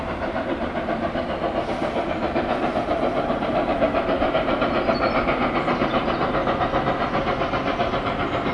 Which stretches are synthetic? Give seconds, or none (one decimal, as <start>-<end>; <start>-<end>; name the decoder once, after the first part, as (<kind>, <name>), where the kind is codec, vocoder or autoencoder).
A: 0.0-1.0 (vocoder, BigVGAN v2); 3.4-5.0